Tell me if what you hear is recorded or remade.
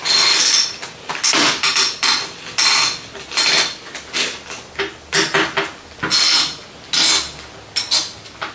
recorded